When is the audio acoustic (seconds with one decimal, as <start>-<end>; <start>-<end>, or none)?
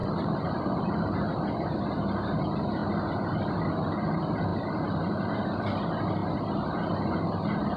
1.2-4.5; 5.4-7.8